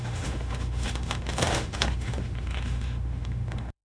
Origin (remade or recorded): remade